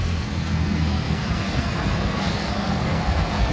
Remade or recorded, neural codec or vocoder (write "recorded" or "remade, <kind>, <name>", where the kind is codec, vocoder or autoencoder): remade, codec, SNAC